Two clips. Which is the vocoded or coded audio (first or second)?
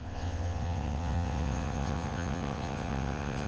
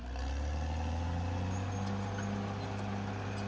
first